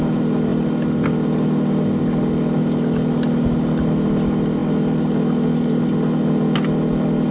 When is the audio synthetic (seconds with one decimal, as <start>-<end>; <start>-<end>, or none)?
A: none